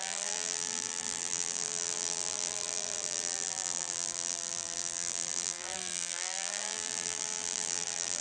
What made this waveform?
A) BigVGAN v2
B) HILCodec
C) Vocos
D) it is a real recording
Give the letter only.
A